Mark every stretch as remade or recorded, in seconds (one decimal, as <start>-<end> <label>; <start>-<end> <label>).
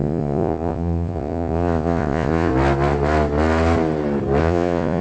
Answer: 0.0-2.5 remade; 2.5-4.4 recorded; 4.4-5.0 remade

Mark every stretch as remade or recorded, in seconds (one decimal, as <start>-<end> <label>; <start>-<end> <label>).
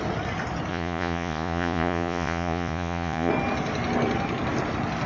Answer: 0.0-0.7 recorded; 0.7-3.3 remade; 3.3-5.1 recorded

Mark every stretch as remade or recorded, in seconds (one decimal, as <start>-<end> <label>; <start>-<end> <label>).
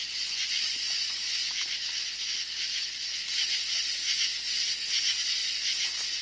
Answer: 0.0-0.9 remade; 0.9-6.2 recorded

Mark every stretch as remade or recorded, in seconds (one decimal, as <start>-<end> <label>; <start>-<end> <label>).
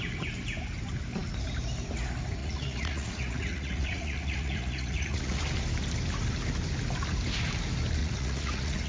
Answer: 0.0-2.4 recorded; 2.4-5.4 remade; 5.4-8.0 recorded; 8.0-8.9 remade